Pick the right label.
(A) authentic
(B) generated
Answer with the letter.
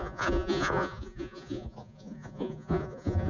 B